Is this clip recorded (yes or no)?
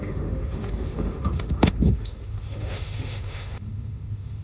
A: no